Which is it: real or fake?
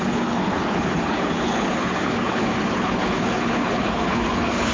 fake